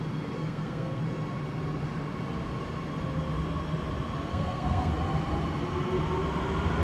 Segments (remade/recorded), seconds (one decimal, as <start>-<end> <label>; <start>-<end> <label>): 0.0-0.4 recorded; 0.4-1.0 remade; 1.0-4.3 recorded; 4.3-4.9 remade; 4.9-6.8 recorded